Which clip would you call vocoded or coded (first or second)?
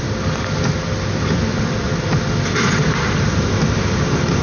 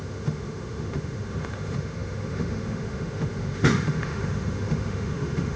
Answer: second